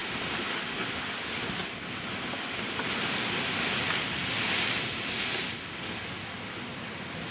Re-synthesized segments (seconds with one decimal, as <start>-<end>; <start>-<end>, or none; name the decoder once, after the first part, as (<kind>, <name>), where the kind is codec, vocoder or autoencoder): none

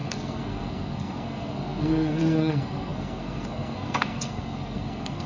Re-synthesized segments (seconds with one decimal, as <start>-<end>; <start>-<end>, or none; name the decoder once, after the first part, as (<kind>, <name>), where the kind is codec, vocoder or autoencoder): 0.0-5.3 (codec, SNAC)